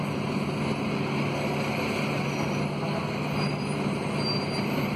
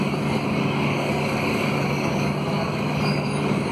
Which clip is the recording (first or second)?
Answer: first